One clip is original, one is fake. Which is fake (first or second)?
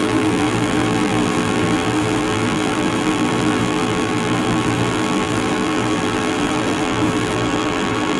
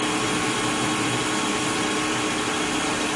first